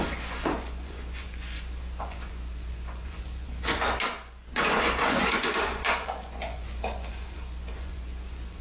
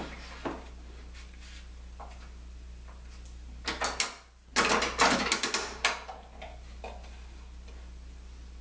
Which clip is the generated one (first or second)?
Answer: first